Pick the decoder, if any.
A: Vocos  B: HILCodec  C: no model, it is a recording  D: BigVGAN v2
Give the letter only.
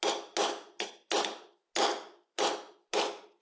C